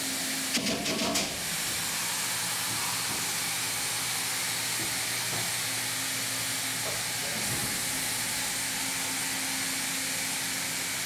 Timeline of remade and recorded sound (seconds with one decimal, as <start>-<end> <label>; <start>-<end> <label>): 0.0-11.1 recorded